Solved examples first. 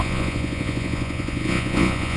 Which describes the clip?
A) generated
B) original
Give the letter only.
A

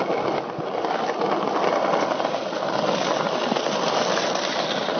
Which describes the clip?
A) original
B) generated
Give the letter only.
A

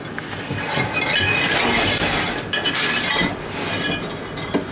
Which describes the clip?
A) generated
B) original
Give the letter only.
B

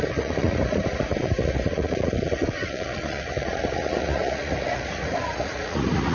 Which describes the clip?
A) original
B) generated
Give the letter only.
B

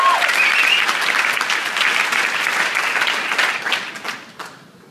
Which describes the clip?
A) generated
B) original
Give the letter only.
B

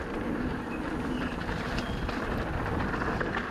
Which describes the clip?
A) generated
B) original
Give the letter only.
B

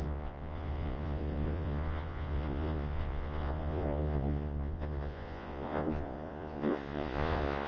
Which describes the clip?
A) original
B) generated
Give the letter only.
B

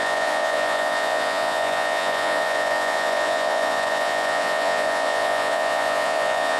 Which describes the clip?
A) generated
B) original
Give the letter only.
A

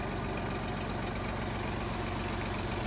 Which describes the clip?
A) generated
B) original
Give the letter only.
B